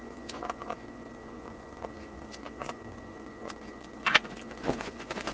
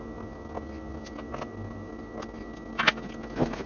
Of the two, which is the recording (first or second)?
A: second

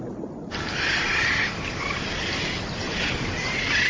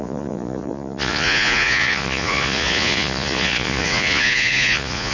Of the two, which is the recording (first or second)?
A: first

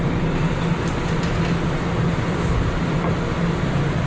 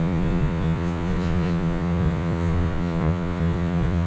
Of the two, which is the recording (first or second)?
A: first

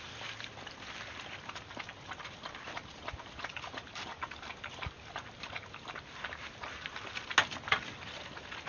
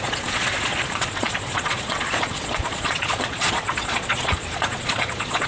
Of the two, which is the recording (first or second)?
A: first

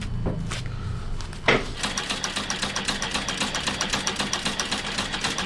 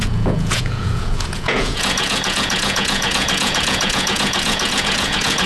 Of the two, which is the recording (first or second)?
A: first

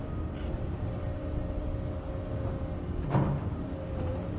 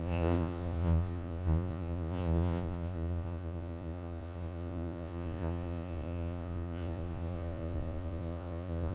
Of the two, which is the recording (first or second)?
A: first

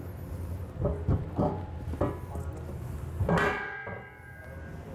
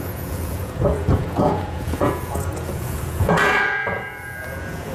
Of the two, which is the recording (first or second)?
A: first